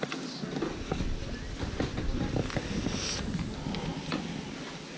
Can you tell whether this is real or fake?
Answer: real